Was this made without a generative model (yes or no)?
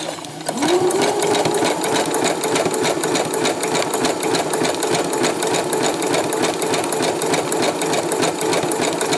yes